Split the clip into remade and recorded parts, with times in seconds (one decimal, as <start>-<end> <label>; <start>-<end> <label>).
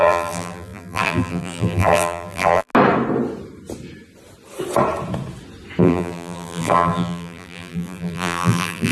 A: 0.0-2.7 remade; 2.7-5.8 recorded; 5.8-8.9 remade